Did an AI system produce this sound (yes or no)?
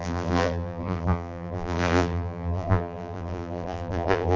yes